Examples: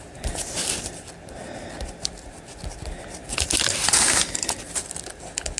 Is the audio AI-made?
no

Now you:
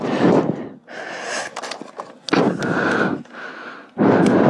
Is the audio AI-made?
no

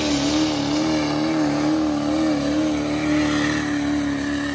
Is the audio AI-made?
no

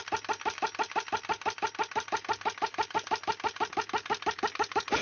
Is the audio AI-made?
no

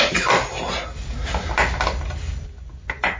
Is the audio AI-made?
no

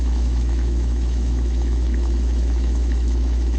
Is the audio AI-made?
yes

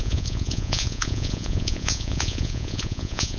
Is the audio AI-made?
yes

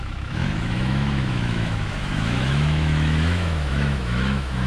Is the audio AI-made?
yes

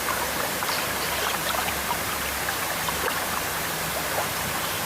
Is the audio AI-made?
no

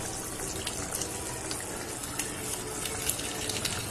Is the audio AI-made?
no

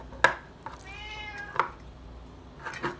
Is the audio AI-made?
no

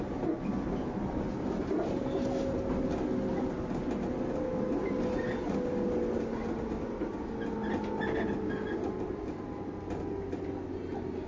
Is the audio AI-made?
no